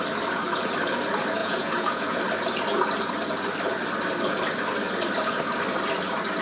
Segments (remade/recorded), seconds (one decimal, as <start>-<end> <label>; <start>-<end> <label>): 0.0-1.4 recorded; 1.4-2.2 remade; 2.2-6.4 recorded